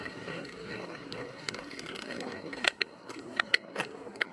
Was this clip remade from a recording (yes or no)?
yes